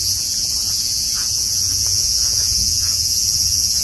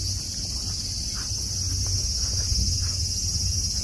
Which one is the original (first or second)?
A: second